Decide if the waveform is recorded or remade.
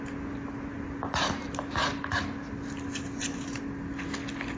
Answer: recorded